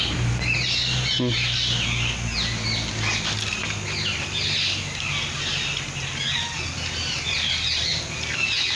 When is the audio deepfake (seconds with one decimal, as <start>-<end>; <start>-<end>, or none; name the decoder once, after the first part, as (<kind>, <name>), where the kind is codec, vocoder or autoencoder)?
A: none